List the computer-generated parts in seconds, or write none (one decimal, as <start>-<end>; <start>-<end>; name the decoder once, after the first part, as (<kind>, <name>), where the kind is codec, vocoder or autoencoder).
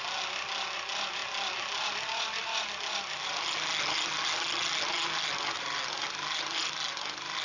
none